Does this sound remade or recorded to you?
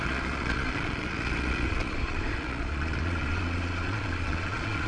remade